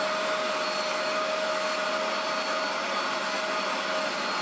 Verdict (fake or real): real